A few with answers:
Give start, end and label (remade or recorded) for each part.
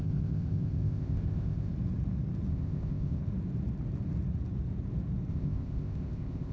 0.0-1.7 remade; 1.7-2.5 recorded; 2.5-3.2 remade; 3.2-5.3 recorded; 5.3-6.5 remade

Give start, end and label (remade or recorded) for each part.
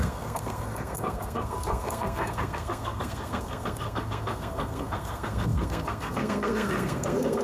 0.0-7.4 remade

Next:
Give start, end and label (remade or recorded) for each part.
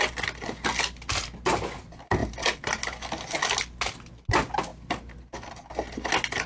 0.0-6.5 recorded